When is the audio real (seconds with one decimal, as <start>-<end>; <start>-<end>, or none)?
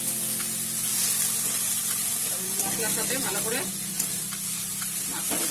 0.0-5.5